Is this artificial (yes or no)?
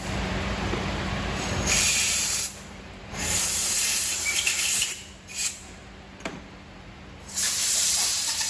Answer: yes